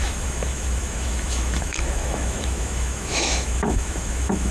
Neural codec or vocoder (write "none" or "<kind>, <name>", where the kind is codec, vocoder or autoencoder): autoencoder, DAC-VAE